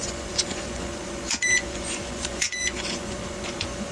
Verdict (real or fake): fake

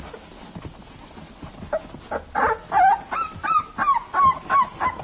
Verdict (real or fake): real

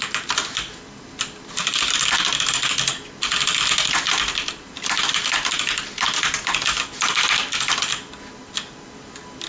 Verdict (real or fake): real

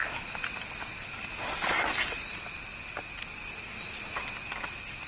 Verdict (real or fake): real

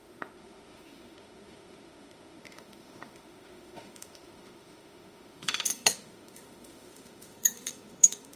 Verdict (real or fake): fake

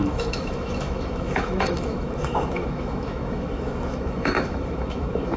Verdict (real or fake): fake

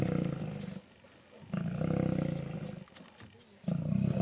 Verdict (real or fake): real